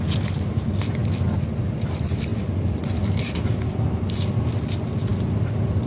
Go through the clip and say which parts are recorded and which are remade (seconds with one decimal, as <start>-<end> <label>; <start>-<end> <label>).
0.0-1.0 remade; 1.0-1.5 recorded; 1.5-2.3 remade; 2.3-3.2 recorded; 3.2-5.1 remade; 5.1-5.9 recorded